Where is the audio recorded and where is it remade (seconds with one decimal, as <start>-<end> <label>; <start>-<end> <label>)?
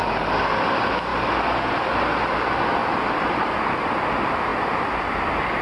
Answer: 0.0-2.8 recorded; 2.8-4.0 remade; 4.0-5.6 recorded